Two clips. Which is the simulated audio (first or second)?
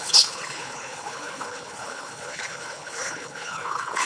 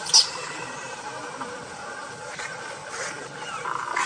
first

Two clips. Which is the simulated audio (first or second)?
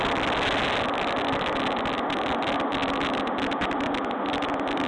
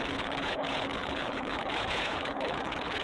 second